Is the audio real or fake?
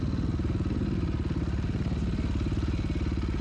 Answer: real